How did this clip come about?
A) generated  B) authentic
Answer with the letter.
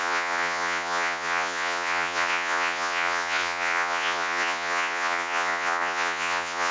A